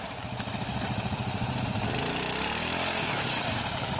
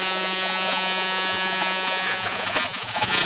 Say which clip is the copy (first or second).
second